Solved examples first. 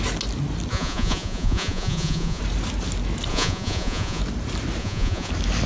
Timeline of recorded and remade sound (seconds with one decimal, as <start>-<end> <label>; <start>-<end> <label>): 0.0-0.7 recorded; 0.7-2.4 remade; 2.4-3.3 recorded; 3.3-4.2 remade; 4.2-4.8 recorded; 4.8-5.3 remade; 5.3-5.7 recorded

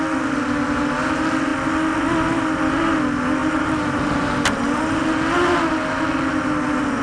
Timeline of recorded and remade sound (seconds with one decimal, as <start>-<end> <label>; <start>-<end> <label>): 0.0-3.4 recorded; 3.4-4.8 remade; 4.8-7.0 recorded

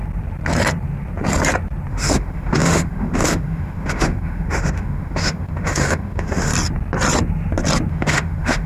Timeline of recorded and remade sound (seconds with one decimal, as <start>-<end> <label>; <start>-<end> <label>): 0.0-1.9 recorded; 1.9-6.5 remade; 6.5-7.9 recorded; 7.9-8.7 remade

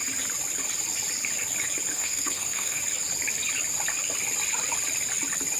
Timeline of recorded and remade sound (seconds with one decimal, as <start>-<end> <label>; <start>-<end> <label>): 0.0-1.9 recorded; 1.9-2.8 remade; 2.8-5.6 recorded